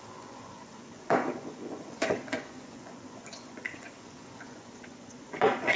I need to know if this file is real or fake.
fake